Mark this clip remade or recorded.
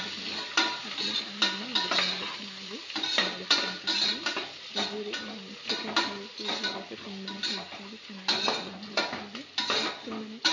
recorded